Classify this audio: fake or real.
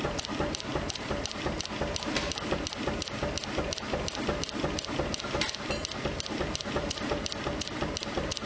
real